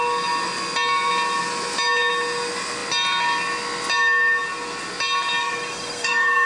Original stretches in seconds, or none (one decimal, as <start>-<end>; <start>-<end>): 0.0-5.4